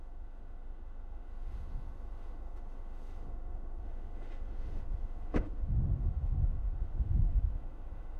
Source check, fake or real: fake